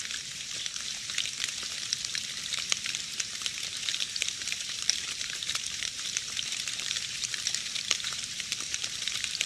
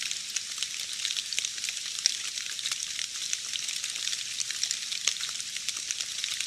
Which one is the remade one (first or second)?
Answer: first